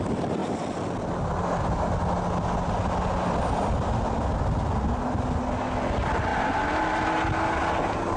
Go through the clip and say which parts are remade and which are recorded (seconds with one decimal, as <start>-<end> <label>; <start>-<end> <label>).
0.0-8.2 recorded